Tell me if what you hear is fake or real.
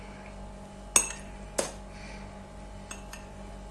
real